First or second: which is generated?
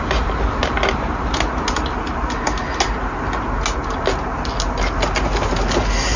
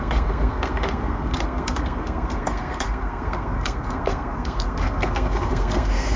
second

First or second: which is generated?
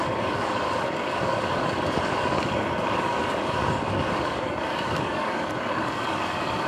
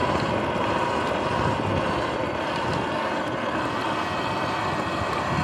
first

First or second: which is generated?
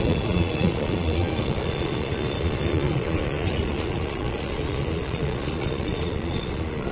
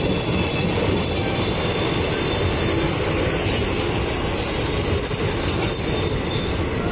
first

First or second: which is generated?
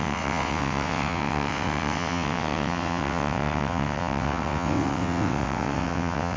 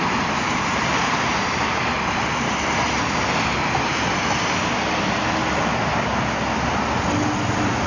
first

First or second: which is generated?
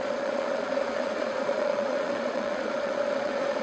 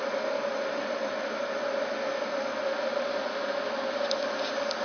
first